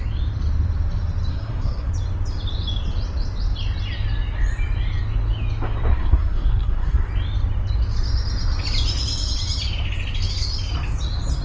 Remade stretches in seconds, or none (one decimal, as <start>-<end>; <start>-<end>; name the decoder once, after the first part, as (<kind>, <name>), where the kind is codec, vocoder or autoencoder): 1.3-1.9 (codec, SNAC); 5.9-7.1

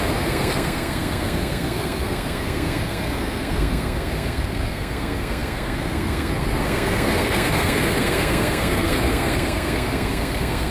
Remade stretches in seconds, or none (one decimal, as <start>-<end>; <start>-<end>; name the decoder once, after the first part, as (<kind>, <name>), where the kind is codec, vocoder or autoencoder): 0.0-10.7 (codec, SNAC)

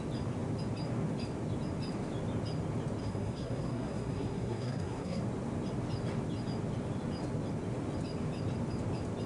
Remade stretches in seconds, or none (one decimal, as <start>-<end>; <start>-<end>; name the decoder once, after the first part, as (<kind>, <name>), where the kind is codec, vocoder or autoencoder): 3.0-5.2 (codec, SNAC)

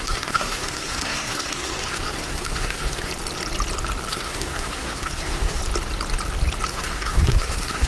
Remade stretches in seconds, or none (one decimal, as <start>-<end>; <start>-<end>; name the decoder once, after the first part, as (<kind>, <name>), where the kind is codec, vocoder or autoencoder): 0.0-3.1 (codec, SNAC); 4.1-5.6; 6.7-7.9